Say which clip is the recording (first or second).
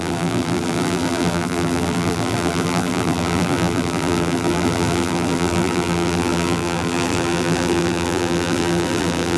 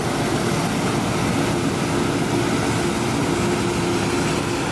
second